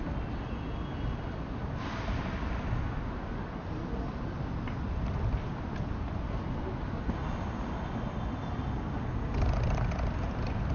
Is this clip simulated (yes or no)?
no